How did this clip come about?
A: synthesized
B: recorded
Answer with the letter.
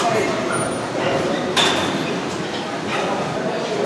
B